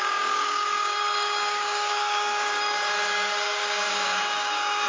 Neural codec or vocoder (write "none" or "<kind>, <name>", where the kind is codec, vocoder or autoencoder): codec, DAC